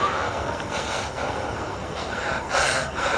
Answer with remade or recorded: remade